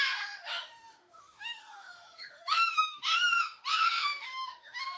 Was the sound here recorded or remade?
remade